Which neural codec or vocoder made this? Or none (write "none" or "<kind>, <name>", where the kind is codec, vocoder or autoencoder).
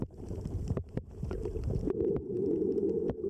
vocoder, BigVGAN v2